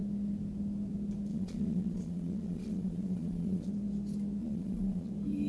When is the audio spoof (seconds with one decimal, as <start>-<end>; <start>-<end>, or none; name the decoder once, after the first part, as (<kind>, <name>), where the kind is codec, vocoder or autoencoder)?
1.3-3.7 (vocoder, Vocos); 4.4-5.1